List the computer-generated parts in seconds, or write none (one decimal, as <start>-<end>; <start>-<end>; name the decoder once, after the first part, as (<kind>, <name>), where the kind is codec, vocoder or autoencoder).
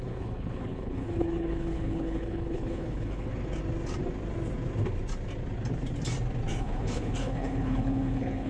0.0-3.3 (codec, HILCodec); 6.6-8.5